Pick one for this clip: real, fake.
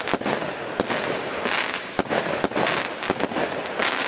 real